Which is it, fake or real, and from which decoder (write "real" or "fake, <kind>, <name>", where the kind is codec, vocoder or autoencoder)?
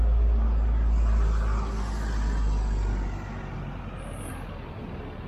real